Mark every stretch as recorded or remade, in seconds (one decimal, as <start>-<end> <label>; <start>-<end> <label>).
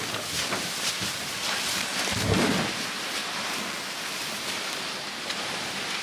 0.0-3.2 recorded; 3.2-4.7 remade; 4.7-6.0 recorded